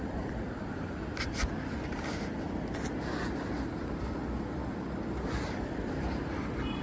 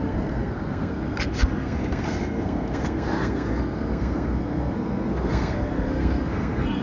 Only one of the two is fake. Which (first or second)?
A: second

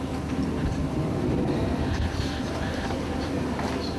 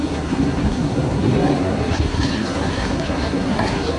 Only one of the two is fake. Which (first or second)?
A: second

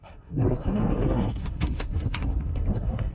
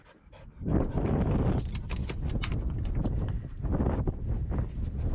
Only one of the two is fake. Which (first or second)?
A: first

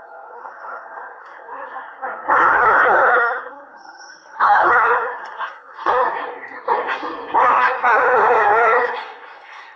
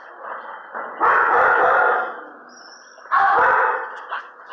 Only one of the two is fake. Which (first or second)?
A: first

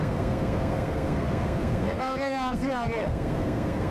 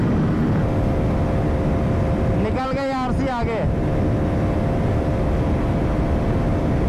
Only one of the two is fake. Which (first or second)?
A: first